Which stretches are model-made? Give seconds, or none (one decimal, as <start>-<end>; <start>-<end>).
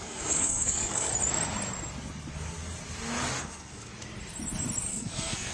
0.0-1.1; 3.4-3.9; 4.9-5.5